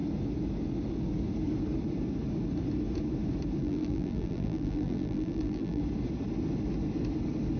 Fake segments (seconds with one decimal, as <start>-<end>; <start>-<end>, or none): 3.6-5.8